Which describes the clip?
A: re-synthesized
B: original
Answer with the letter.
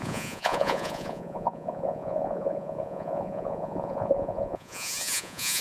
A